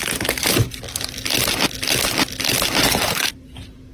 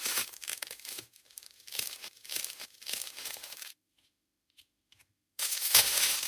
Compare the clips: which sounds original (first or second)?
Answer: first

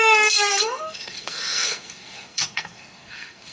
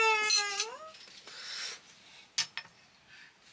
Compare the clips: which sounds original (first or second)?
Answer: second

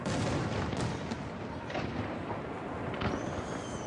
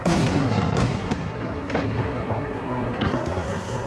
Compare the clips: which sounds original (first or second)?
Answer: first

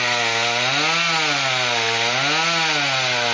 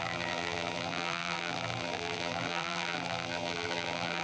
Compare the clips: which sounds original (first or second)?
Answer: first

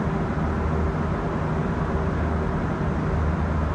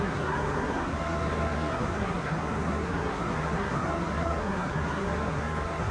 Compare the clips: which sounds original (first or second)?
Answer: first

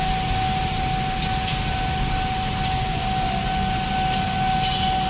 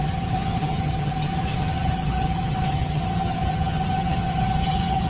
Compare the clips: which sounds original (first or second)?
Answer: first